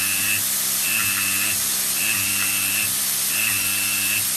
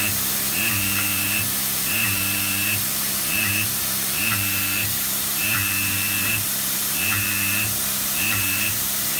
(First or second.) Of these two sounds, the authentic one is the first